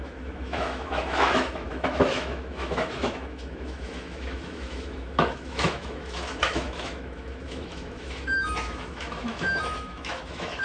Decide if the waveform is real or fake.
fake